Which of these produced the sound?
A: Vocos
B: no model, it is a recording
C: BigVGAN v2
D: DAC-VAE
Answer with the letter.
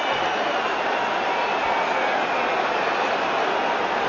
B